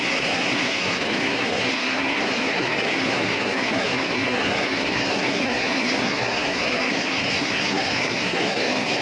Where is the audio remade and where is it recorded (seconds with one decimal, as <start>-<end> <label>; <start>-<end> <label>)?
0.0-9.0 remade